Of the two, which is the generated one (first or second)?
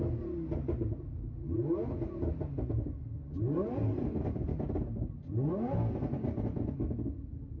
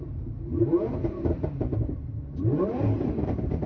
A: second